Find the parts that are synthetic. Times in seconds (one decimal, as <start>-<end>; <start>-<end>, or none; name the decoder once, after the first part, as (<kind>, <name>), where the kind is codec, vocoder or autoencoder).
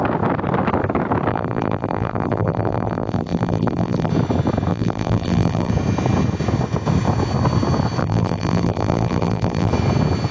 1.3-4.1 (vocoder, BigVGAN v2); 4.7-5.7; 8.0-9.7